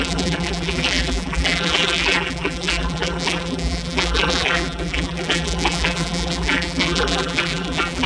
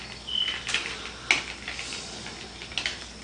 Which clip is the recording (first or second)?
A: second